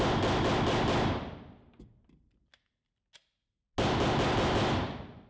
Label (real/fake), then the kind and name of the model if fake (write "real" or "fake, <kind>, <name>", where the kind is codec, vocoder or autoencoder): real